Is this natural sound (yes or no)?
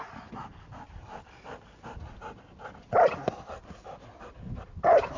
yes